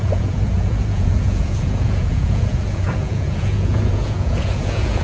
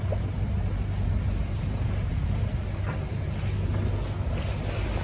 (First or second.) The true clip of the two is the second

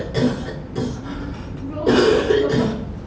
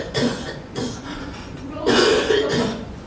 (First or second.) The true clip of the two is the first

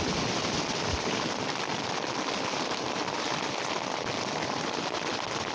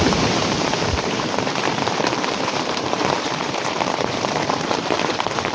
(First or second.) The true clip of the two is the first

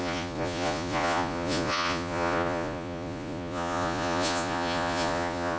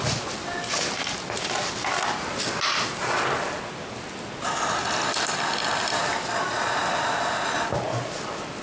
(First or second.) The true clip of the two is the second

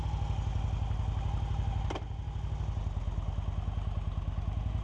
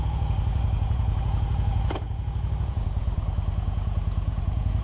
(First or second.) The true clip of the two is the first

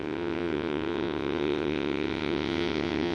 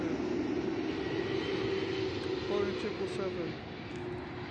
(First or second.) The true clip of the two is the second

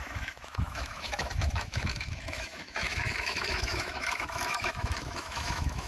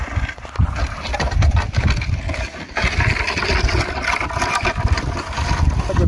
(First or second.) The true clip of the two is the second